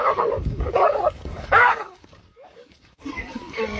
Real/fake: fake